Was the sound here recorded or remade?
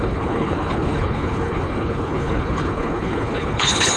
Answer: remade